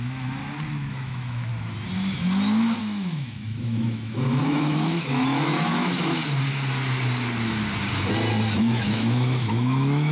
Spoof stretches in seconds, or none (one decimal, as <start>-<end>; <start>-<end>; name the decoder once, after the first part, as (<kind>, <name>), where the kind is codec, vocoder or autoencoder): 0.0-0.4 (autoencoder, DAC-VAE); 0.9-1.5; 2.8-6.2; 8.6-10.1

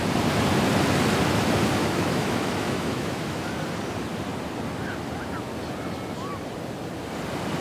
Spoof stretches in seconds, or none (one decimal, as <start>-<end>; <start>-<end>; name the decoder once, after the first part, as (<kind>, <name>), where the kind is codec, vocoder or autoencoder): 1.8-3.5 (autoencoder, DAC-VAE)

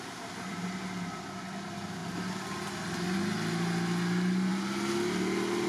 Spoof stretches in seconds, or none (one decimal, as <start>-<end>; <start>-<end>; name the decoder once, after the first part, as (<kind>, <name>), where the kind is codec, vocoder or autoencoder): none

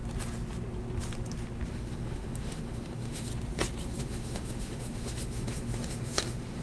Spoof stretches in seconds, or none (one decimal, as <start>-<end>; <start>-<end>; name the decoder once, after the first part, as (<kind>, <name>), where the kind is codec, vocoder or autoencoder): 1.7-3.3 (autoencoder, DAC-VAE); 4.0-6.6

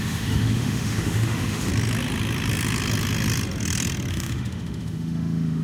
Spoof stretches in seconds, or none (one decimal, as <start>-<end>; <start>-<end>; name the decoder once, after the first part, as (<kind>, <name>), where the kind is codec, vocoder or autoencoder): 0.0-1.7 (autoencoder, DAC-VAE); 4.1-5.6

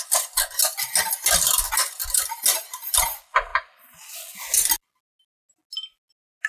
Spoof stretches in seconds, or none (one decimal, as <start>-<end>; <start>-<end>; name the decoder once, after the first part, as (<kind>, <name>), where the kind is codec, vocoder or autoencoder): none

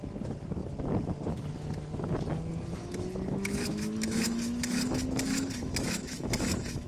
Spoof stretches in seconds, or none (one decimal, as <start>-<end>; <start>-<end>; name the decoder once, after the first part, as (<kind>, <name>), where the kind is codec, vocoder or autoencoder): 2.8-6.9 (autoencoder, DAC-VAE)